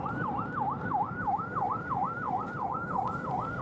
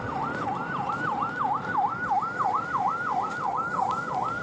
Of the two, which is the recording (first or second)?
second